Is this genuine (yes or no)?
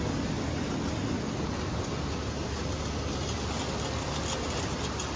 yes